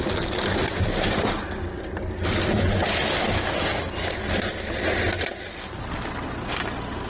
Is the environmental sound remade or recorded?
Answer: recorded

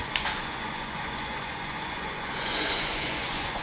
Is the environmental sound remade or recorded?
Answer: remade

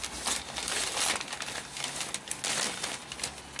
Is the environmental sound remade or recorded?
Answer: recorded